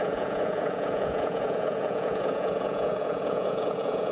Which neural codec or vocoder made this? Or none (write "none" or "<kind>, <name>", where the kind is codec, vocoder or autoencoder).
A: vocoder, Vocos